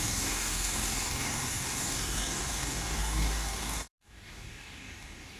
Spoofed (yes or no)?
yes